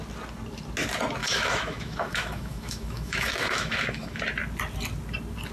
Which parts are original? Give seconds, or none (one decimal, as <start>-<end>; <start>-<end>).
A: 0.0-1.2; 4.2-5.5